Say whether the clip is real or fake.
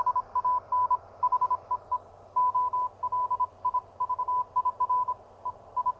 real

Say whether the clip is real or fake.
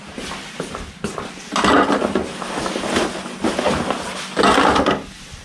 real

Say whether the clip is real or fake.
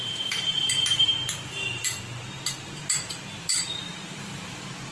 fake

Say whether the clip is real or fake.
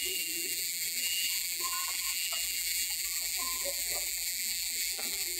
fake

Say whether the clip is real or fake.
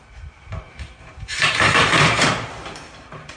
fake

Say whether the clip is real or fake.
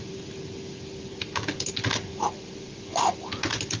real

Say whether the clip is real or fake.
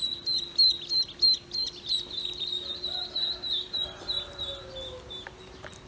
real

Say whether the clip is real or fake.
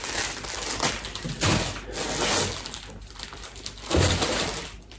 real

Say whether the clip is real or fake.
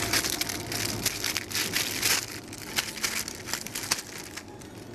real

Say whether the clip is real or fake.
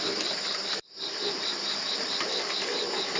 fake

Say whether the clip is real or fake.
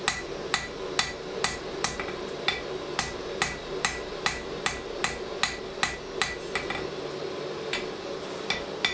real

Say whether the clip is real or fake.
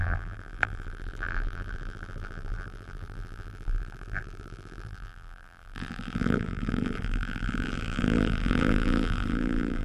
fake